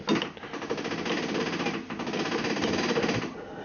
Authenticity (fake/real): real